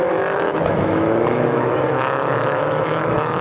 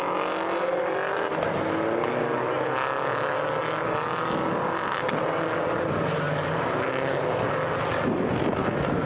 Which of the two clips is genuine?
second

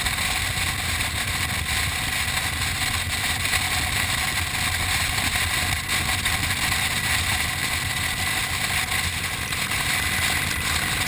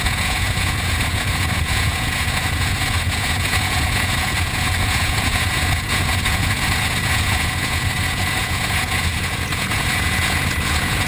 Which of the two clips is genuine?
first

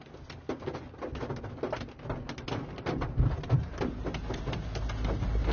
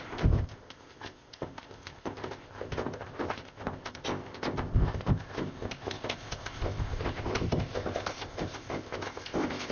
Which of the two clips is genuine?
first